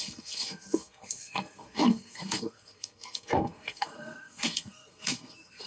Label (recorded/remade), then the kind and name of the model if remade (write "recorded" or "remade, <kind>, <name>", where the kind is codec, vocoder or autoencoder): remade, codec, SNAC